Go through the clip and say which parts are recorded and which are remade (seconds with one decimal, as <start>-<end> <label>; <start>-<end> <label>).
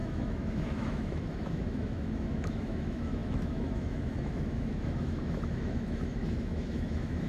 0.0-7.3 remade